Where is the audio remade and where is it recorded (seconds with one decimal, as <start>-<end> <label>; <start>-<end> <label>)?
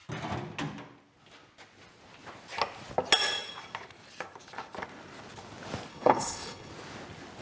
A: 0.0-5.9 recorded; 5.9-6.7 remade; 6.7-7.4 recorded